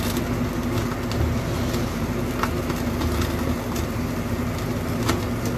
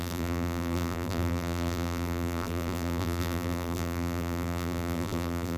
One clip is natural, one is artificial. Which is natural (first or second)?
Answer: first